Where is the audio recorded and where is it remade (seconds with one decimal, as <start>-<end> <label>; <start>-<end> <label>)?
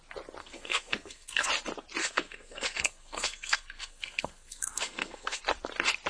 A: 0.0-0.4 recorded; 0.4-1.5 remade; 1.5-2.0 recorded; 2.0-5.4 remade; 5.4-6.1 recorded